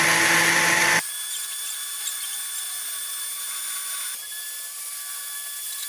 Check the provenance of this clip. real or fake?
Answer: real